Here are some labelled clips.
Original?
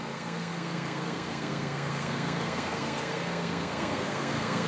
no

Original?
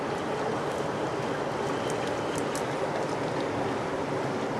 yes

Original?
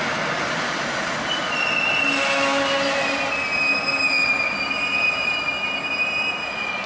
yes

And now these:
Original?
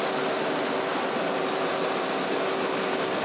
yes